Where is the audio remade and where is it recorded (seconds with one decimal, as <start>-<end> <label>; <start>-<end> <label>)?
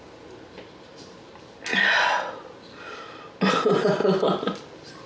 0.0-5.1 recorded